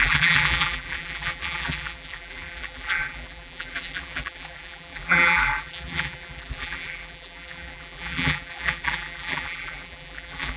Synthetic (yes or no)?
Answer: yes